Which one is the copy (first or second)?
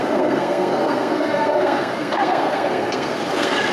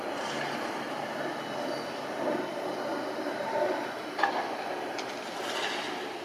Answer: first